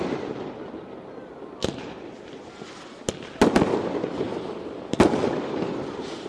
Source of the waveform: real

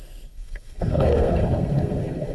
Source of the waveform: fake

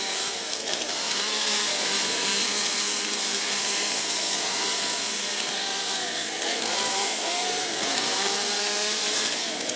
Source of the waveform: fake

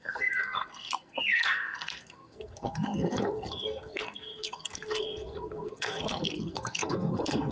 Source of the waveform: fake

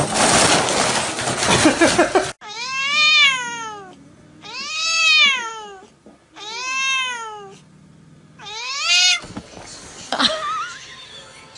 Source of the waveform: real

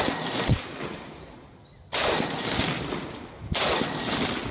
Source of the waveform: real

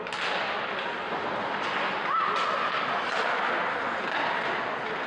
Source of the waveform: real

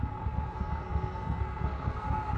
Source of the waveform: fake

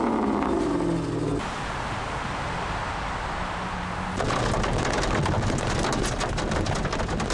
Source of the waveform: real